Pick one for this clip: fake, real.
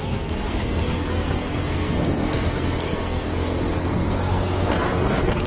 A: fake